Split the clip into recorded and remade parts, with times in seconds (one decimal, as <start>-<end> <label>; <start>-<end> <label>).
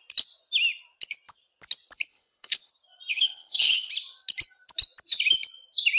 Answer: 0.0-2.1 recorded; 2.1-2.7 remade; 2.7-3.1 recorded; 3.1-3.9 remade; 3.9-6.0 recorded